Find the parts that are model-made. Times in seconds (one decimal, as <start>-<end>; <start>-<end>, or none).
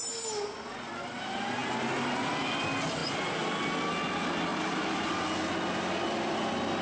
3.0-3.6; 4.5-5.1